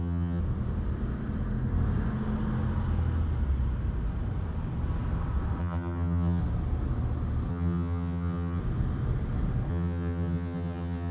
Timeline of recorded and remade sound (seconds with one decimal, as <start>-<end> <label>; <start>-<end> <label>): 0.0-0.4 remade; 0.4-5.6 recorded; 5.6-6.4 remade; 6.4-7.5 recorded; 7.5-8.6 remade; 8.6-9.7 recorded; 9.7-11.1 remade